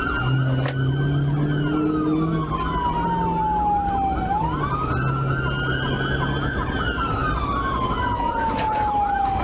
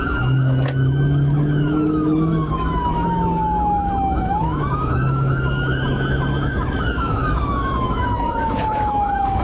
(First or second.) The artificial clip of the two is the second